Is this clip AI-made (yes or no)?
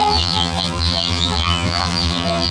yes